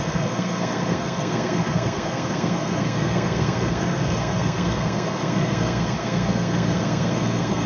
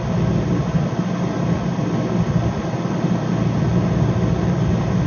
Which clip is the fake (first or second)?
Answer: first